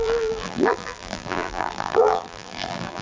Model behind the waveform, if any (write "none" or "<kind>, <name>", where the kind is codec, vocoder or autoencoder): vocoder, BigVGAN v2